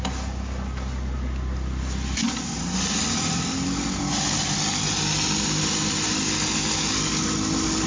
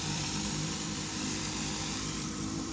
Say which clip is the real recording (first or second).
first